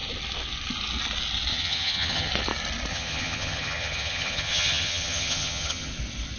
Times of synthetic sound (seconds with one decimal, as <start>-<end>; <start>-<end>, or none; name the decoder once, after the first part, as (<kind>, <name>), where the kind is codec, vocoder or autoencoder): 1.5-2.3 (vocoder, HiFi-GAN); 2.9-5.9